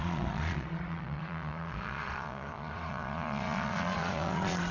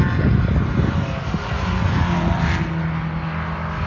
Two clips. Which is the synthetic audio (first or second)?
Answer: first